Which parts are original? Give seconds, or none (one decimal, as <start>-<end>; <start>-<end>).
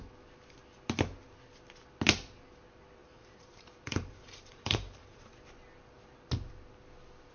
0.0-3.0; 5.3-7.3